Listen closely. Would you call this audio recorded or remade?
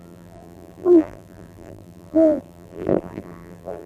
remade